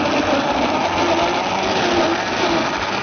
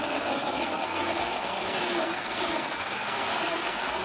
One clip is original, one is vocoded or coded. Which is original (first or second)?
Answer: first